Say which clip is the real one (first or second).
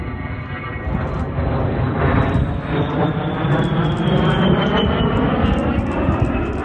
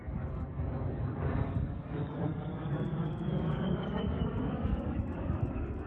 first